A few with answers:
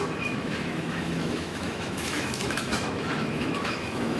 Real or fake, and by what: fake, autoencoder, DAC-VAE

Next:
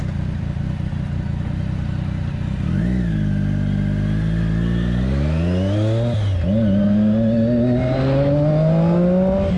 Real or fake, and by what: real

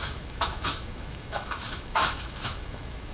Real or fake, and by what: fake, autoencoder, DAC-VAE